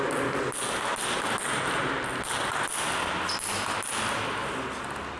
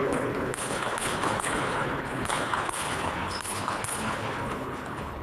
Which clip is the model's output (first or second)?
second